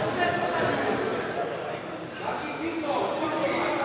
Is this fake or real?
real